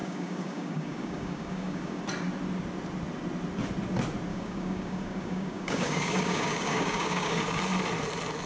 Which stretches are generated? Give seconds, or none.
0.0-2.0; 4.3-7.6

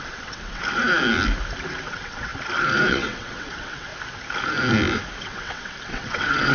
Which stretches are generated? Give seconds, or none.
0.0-0.6; 1.7-2.3; 2.9-3.9; 5.2-6.5